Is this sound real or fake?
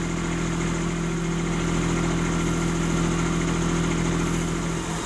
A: real